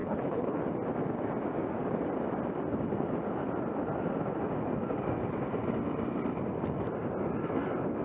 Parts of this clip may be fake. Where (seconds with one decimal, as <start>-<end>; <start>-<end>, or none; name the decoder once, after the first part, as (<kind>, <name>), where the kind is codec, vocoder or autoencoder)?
0.0-0.6 (codec, HILCodec)